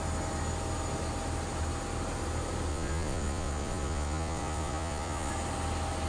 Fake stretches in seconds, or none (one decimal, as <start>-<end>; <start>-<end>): 2.7-5.3